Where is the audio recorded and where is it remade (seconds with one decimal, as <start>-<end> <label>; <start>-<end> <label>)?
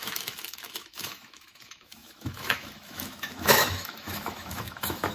0.0-5.1 remade